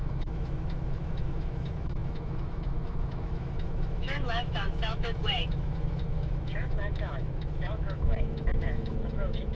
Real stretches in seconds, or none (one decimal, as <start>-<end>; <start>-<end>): none